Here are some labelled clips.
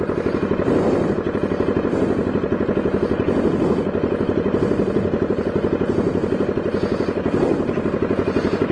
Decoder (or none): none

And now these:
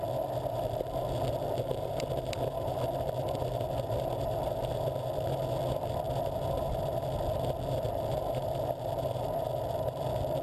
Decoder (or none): none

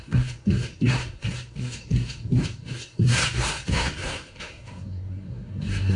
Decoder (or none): codec, SNAC